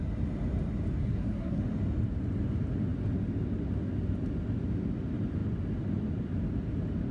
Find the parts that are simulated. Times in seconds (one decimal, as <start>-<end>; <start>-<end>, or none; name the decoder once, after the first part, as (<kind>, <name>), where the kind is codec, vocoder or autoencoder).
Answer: 1.0-1.6 (codec, SNAC)